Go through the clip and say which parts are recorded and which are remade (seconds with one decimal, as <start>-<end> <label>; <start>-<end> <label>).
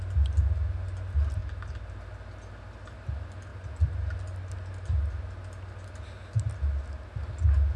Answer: 0.0-7.8 recorded